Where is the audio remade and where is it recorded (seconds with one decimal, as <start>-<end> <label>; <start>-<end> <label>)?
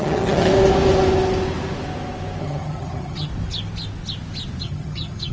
0.0-0.5 remade; 0.5-2.4 recorded; 2.4-3.3 remade; 3.3-4.6 recorded; 4.6-5.3 remade